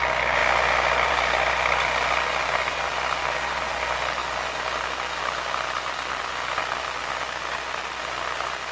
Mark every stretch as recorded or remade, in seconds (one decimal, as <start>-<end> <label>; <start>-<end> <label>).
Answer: 0.0-8.7 recorded

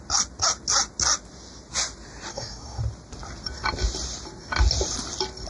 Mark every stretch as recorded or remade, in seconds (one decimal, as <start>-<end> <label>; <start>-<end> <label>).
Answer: 0.0-2.3 recorded; 2.3-2.8 remade; 2.8-5.5 recorded

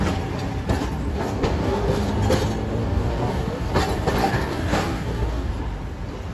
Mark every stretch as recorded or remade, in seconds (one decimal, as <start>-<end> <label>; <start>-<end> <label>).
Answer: 0.0-1.1 recorded; 1.1-2.1 remade; 2.1-2.8 recorded; 2.8-3.7 remade; 3.7-4.2 recorded; 4.2-5.5 remade; 5.5-6.3 recorded